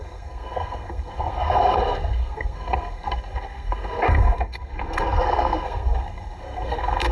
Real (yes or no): no